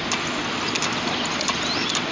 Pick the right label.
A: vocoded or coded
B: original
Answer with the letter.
B